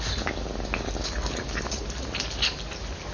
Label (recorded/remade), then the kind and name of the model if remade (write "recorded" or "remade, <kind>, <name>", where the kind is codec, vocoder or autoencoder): recorded